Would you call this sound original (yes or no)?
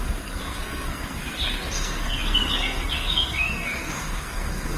no